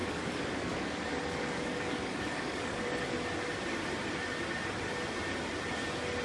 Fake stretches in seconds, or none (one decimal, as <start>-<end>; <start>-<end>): 0.0-3.0